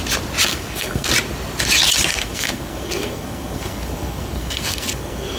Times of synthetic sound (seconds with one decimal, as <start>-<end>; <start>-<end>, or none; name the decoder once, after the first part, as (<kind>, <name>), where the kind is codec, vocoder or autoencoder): 0.5-1.1 (codec, SNAC); 2.1-5.4

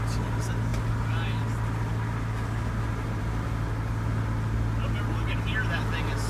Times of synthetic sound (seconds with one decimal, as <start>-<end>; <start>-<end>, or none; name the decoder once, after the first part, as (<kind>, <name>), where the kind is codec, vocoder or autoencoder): none

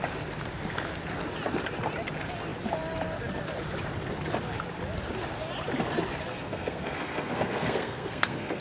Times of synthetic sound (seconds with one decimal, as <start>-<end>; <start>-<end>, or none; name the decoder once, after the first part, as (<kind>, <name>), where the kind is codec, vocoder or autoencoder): 6.3-8.6 (codec, SNAC)

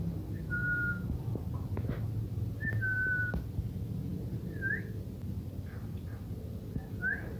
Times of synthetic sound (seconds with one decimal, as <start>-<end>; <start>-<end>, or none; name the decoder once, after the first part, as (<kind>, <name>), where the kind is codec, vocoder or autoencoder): none

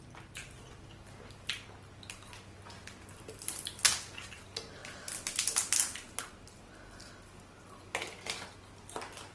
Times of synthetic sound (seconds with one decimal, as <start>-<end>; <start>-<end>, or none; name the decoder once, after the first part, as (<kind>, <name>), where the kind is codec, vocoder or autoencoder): none

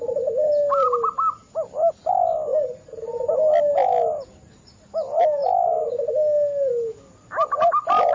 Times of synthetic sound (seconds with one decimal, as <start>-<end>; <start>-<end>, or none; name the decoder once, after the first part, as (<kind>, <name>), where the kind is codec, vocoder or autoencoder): none

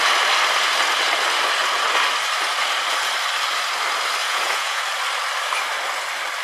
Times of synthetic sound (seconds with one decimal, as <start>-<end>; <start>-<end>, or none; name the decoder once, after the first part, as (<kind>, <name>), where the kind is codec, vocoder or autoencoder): 4.2-4.8 (vocoder, Vocos)

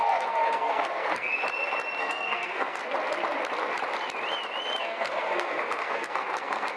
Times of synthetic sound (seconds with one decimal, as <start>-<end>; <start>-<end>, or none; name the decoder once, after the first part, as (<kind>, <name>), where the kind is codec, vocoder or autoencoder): 0.0-1.3 (codec, SNAC); 2.0-2.8; 4.8-6.8